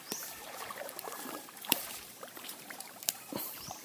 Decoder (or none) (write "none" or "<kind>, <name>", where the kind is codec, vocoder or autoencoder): vocoder, BigVGAN v2